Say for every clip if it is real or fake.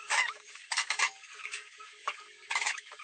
fake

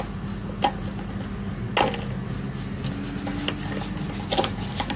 real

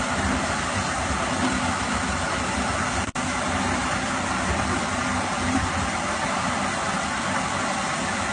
real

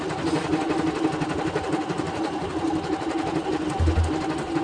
real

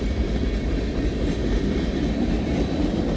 real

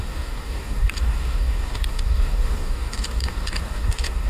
fake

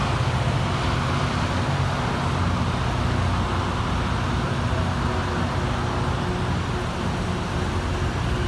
real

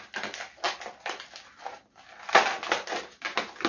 real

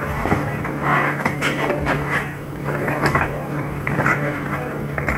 fake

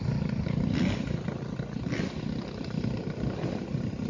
real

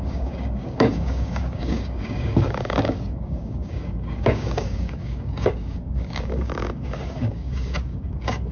fake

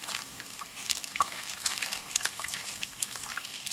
fake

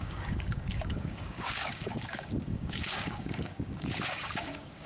fake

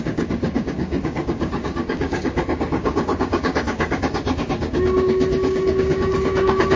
fake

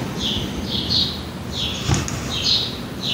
real